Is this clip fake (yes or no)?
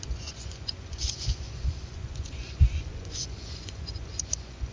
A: yes